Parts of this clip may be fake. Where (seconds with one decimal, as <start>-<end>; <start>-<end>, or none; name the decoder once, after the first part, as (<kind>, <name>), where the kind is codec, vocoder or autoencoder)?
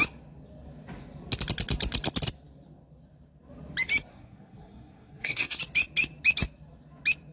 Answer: 4.1-5.6 (codec, SNAC)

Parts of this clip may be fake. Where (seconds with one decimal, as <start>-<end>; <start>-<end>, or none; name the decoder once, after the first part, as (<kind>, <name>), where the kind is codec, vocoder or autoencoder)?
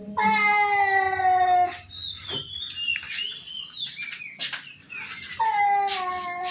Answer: none